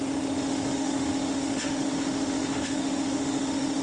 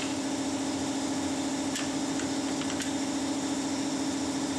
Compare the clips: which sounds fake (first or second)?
first